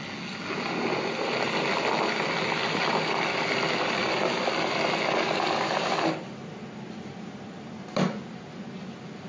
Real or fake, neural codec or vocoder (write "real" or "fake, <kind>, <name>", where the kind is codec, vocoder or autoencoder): real